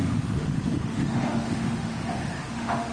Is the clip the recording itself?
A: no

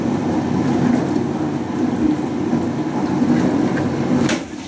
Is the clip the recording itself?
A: yes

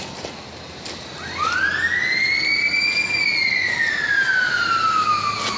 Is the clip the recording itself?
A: yes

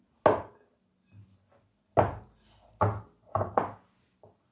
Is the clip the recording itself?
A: yes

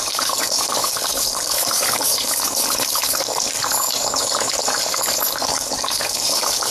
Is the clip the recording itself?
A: no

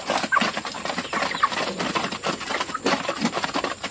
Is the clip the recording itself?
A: yes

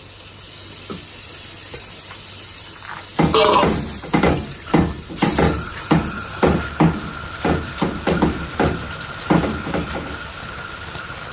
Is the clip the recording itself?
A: yes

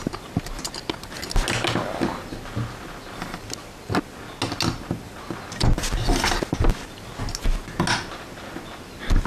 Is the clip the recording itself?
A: yes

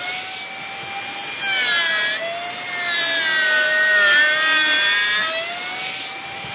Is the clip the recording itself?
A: yes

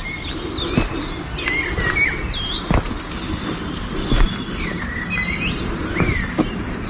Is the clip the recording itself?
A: yes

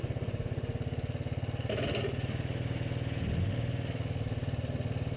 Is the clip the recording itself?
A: yes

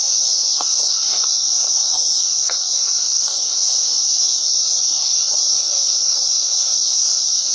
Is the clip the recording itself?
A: no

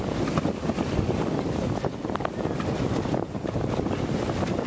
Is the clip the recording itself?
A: yes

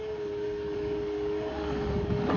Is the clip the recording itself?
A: no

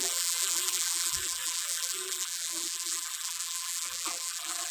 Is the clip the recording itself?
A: no